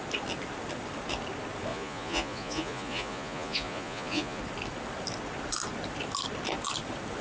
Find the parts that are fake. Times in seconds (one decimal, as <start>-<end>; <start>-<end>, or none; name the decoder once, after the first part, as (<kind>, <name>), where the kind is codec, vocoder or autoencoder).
1.7-4.4 (vocoder, Vocos)